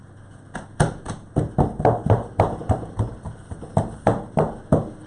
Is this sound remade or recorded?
remade